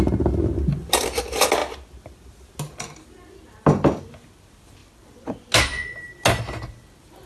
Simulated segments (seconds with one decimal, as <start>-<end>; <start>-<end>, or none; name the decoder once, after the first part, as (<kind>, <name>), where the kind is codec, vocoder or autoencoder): none